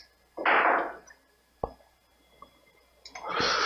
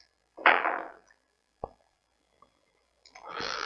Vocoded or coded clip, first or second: second